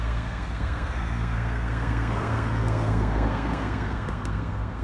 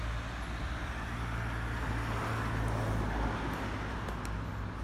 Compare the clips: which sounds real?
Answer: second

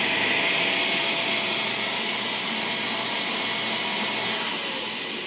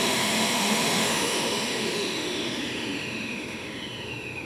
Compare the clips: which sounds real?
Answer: first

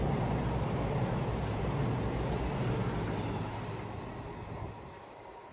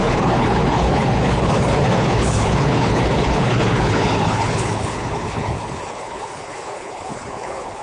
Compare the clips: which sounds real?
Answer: first